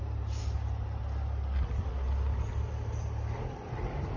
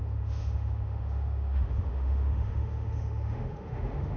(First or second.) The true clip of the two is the first